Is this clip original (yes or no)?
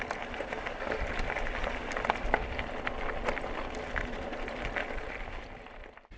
yes